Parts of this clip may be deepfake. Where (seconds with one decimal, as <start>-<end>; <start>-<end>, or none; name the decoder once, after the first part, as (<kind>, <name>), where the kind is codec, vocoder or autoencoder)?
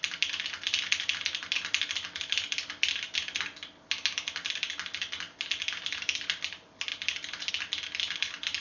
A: 6.9-7.5 (vocoder, BigVGAN v2)